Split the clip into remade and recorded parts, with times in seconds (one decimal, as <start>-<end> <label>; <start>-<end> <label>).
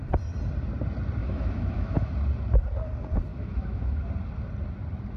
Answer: 0.0-1.2 recorded; 1.2-2.1 remade; 2.1-3.3 recorded; 3.3-4.0 remade; 4.0-5.2 recorded